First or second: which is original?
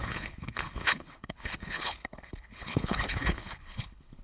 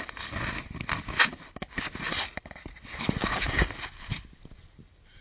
second